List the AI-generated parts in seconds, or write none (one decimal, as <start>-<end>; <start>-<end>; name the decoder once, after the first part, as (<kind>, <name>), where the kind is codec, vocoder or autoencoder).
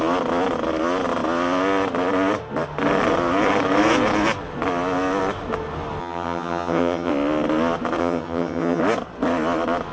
6.0-7.1 (vocoder, HiFi-GAN); 8.0-8.8